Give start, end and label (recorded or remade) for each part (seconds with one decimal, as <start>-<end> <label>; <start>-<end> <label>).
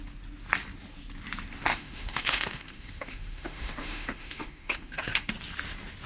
0.0-1.7 recorded; 1.7-5.3 remade; 5.3-6.1 recorded